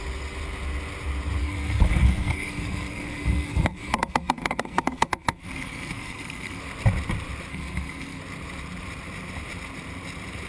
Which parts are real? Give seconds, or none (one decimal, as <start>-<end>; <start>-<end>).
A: 0.0-1.4; 6.6-7.5; 8.2-10.5